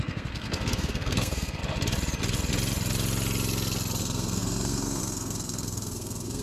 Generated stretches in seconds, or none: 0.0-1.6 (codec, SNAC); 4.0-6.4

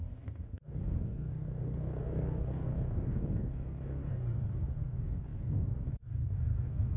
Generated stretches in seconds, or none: 0.0-7.0 (codec, DAC)

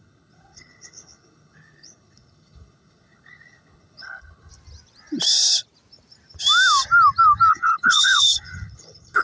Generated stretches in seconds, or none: 0.0-4.5 (codec, HILCodec); 7.5-9.2